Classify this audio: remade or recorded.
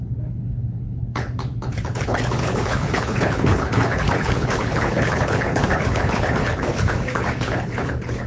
remade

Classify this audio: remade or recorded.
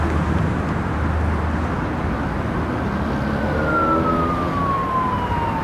recorded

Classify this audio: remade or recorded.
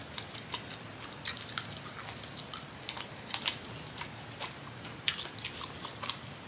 recorded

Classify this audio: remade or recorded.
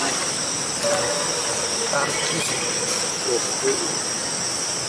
recorded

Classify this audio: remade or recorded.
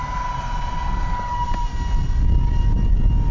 recorded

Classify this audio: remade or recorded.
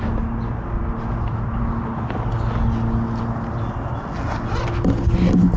recorded